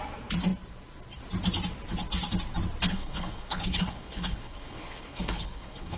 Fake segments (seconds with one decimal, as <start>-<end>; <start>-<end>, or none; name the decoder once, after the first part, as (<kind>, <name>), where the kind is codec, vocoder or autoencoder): 2.9-6.0 (codec, HILCodec)

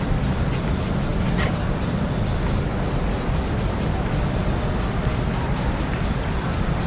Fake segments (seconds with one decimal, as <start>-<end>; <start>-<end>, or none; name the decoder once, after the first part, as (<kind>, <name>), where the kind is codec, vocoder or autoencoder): none

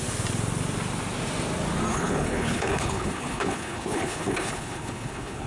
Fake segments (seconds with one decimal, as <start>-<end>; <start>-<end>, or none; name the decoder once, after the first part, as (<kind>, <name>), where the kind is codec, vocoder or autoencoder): 1.9-5.5 (codec, HILCodec)

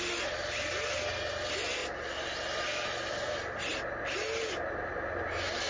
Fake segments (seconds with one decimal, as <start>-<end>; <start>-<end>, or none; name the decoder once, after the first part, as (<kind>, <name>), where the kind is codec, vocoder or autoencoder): none